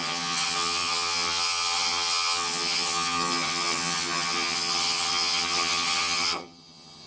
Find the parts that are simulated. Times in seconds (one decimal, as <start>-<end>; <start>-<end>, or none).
0.0-7.1